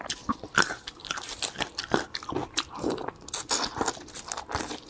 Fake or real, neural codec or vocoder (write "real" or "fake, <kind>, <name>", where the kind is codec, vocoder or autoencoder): fake, vocoder, BigVGAN v2